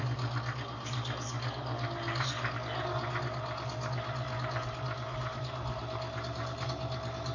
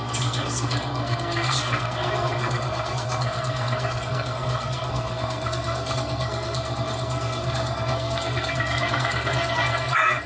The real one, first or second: first